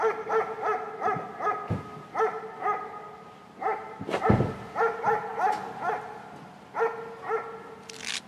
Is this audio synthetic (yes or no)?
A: no